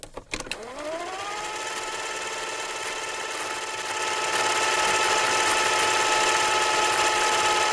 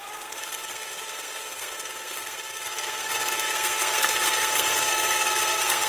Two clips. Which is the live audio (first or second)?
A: first